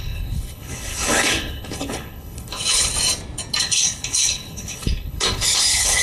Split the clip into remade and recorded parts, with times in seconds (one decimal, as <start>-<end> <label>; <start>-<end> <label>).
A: 0.0-2.9 remade; 2.9-3.6 recorded; 3.6-6.0 remade